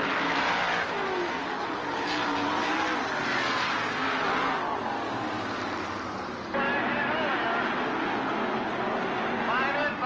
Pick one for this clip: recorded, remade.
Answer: recorded